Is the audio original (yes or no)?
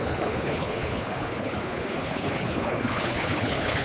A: no